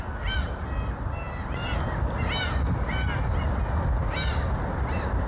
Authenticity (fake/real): fake